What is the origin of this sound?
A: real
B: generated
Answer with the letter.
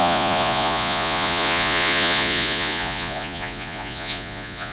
B